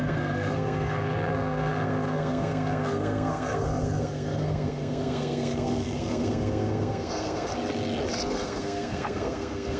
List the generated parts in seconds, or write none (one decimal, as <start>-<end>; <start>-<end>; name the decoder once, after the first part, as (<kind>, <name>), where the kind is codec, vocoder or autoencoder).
0.0-7.5 (codec, SNAC); 8.3-9.8